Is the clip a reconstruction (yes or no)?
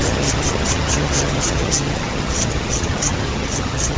yes